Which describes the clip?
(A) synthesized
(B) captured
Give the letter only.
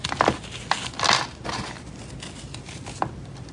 B